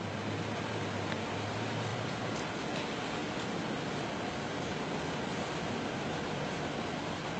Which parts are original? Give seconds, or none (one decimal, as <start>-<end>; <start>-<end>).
0.0-7.4